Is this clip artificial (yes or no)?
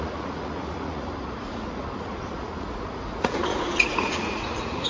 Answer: yes